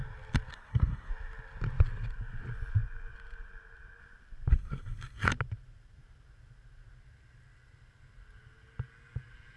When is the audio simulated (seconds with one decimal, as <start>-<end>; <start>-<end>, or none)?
0.5-1.1; 4.5-5.3

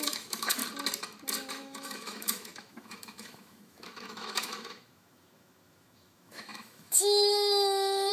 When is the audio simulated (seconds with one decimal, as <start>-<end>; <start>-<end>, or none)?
0.0-0.6; 1.5-8.1

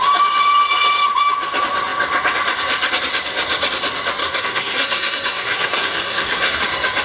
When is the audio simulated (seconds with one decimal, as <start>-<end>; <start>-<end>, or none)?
4.2-6.6